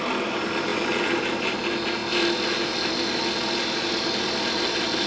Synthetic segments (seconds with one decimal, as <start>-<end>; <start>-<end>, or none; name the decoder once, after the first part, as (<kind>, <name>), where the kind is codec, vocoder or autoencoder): none